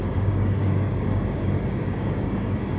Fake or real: fake